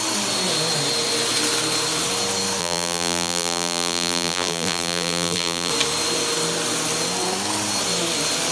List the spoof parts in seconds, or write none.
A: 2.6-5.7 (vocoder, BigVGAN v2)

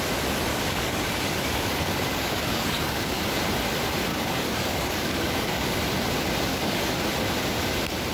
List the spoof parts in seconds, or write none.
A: 0.5-3.2 (codec, DAC); 4.1-5.8; 6.5-7.0